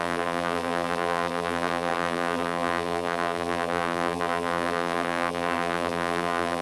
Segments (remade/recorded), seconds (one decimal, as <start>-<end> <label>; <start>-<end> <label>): 0.0-6.6 remade